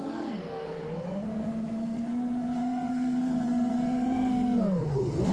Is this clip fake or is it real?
fake